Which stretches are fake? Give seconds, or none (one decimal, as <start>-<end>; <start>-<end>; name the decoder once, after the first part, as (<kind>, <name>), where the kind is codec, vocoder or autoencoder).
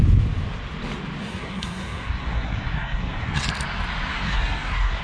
1.2-3.4 (codec, SNAC); 4.1-5.0